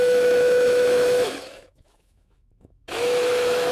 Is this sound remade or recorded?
remade